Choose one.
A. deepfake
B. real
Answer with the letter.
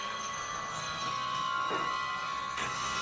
A